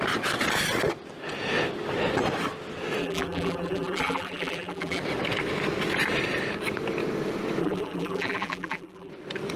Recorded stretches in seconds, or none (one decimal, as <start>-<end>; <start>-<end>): 0.0-3.0; 5.0-7.6; 9.1-9.6

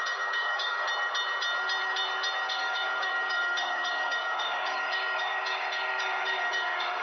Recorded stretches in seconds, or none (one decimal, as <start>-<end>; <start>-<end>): 0.8-2.5

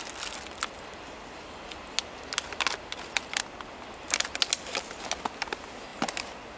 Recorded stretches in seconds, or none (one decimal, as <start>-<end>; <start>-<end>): 0.0-6.6

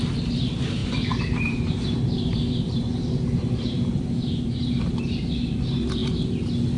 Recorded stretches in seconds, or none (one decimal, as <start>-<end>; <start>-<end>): 0.0-0.8; 4.9-6.8

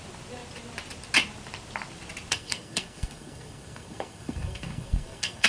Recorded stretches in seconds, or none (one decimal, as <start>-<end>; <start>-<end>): 0.0-2.3

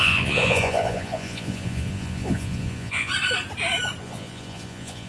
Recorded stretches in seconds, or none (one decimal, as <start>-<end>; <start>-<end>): 3.1-4.0